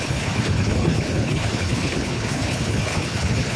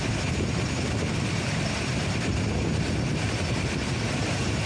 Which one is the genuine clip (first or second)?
second